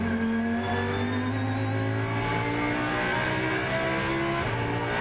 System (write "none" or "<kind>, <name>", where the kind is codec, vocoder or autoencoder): none